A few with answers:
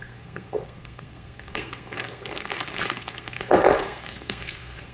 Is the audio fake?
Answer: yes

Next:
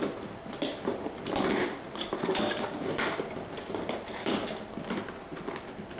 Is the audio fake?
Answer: no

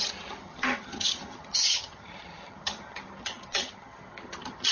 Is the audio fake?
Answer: yes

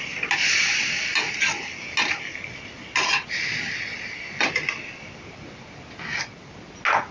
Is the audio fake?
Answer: no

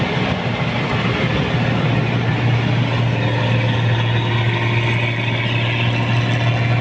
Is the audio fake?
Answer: no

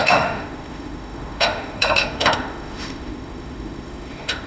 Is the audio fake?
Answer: yes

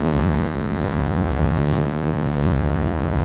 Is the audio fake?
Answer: yes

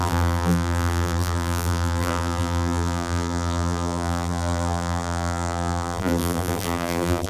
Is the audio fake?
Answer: yes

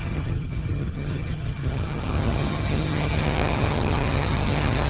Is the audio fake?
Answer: yes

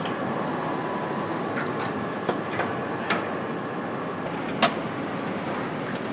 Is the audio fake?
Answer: no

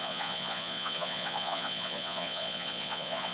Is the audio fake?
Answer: yes